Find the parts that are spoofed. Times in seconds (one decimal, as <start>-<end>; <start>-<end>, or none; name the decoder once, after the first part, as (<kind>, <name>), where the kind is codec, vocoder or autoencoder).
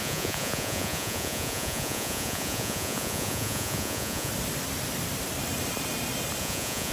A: 0.0-4.3 (vocoder, Vocos); 6.4-6.9